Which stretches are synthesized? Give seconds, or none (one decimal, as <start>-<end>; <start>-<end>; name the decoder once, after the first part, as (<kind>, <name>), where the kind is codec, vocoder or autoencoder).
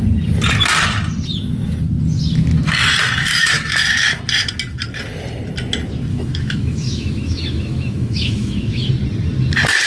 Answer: 3.3-4.2 (autoencoder, DAC-VAE); 6.1-8.9